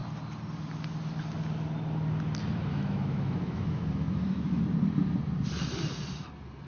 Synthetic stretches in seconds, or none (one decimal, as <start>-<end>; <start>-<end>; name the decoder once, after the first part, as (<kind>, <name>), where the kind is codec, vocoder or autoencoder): 2.7-4.6 (autoencoder, DAC-VAE)